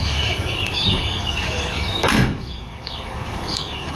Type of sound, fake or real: fake